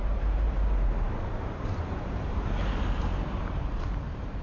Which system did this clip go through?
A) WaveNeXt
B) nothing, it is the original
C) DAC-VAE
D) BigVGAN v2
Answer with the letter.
D